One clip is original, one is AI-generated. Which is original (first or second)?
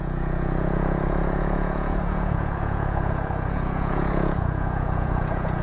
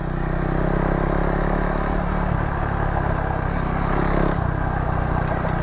second